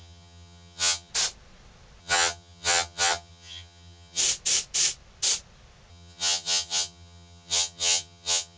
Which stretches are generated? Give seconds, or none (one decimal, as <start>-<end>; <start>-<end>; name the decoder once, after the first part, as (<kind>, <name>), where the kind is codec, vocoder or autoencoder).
0.0-1.1 (vocoder, HiFi-GAN); 2.0-4.2; 5.9-8.6